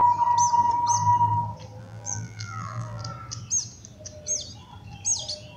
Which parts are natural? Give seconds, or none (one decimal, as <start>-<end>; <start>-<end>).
0.0-1.8; 3.0-5.6